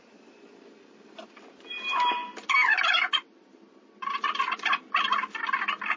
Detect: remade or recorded recorded